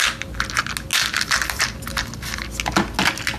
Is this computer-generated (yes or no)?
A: no